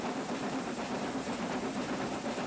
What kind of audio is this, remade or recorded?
remade